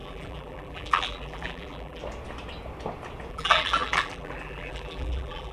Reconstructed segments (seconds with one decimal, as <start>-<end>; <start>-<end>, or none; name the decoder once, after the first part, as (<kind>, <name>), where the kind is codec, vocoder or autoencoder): 0.0-2.0 (vocoder, BigVGAN v2); 3.3-5.5